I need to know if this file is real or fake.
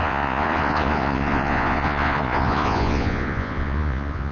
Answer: fake